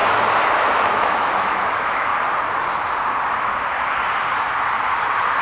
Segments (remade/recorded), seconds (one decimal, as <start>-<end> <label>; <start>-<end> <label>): 0.0-0.9 recorded; 0.9-2.1 remade; 2.1-5.4 recorded